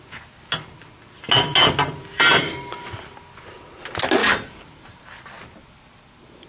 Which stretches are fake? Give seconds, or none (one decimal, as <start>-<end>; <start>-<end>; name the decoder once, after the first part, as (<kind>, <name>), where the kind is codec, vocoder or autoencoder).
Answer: 2.0-2.6 (vocoder, BigVGAN v2); 4.2-5.1